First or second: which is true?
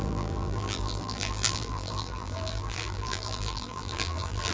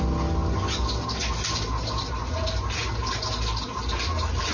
second